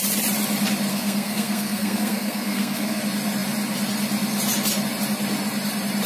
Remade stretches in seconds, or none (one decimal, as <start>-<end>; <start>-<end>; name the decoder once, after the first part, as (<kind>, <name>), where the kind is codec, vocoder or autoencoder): 0.9-3.0 (codec, SNAC)